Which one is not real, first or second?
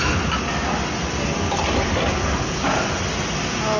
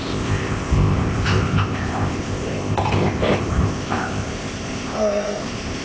second